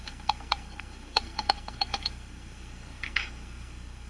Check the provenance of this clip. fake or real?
fake